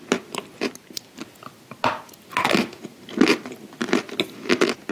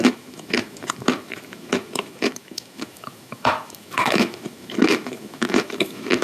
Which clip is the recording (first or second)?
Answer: first